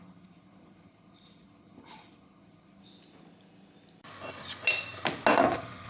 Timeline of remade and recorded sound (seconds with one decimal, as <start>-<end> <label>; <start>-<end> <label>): 0.0-2.8 remade; 2.8-5.4 recorded; 5.4-5.9 remade

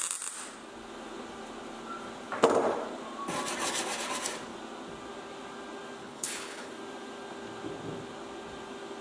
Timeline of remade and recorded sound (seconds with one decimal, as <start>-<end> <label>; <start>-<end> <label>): 0.0-6.0 recorded; 6.0-6.7 remade; 6.7-9.0 recorded

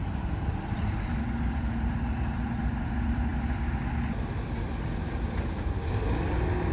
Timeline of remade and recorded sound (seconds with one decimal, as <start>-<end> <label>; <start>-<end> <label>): 0.0-2.0 remade; 2.0-6.7 recorded